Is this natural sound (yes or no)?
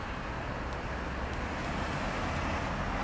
yes